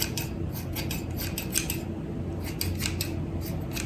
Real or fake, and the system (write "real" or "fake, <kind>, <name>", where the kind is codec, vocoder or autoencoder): real